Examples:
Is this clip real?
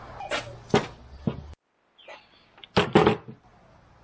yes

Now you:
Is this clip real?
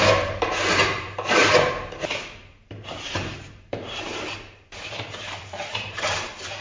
no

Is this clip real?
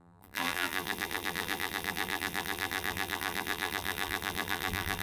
no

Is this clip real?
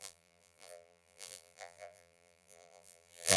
no